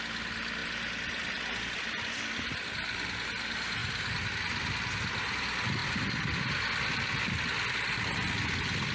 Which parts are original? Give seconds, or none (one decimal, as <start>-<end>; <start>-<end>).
0.0-8.9